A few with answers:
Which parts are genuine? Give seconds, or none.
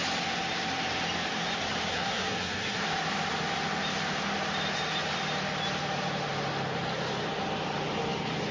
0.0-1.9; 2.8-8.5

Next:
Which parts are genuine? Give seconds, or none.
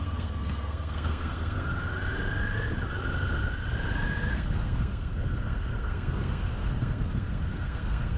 1.7-4.3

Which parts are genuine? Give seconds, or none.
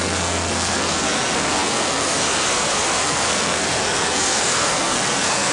none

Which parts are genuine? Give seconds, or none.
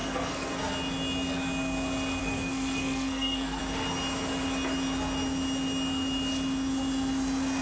0.6-2.2; 3.6-7.6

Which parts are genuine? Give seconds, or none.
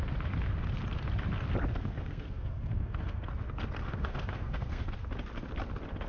0.0-1.7; 3.2-3.8; 4.9-6.1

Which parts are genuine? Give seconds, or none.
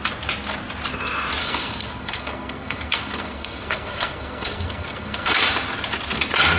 0.0-1.4; 5.4-6.6